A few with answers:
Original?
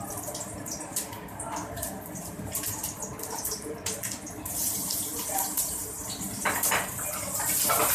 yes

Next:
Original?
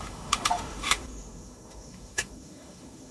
no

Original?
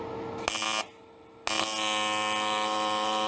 yes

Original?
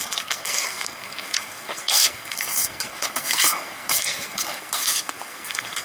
no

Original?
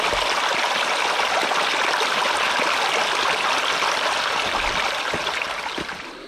yes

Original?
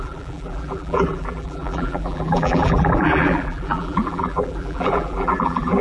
no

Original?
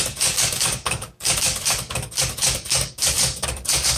no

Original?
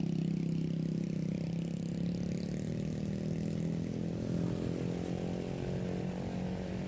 yes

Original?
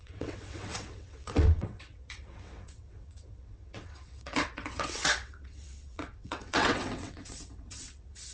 no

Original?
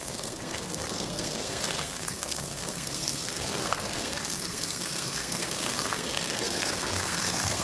no